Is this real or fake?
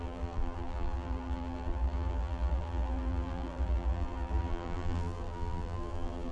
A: fake